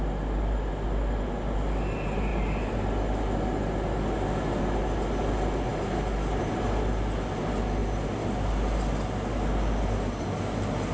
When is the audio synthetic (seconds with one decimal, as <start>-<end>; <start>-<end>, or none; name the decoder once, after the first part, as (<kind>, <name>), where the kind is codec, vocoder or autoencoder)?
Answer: none